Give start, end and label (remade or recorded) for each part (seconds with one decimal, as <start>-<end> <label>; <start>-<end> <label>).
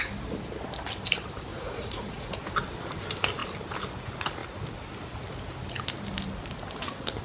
0.0-1.5 recorded; 1.5-2.3 remade; 2.3-7.2 recorded